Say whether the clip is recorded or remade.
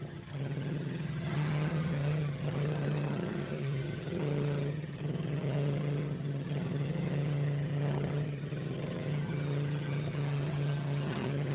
remade